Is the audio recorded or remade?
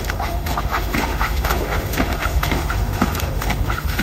remade